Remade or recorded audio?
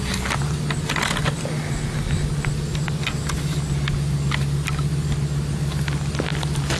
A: recorded